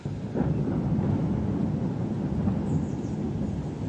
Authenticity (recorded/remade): recorded